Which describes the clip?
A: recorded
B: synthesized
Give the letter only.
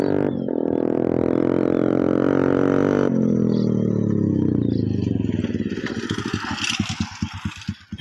A